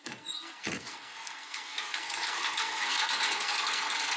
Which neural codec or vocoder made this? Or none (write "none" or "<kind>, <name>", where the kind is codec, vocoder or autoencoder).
codec, SNAC